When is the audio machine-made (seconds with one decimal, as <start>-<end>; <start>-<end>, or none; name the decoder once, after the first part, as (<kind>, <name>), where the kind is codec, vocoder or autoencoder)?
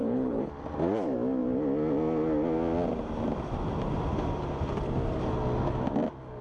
0.0-0.5 (codec, HILCodec)